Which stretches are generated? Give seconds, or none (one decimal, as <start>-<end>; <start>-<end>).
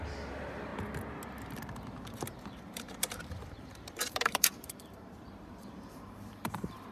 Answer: 0.0-0.7; 1.5-6.9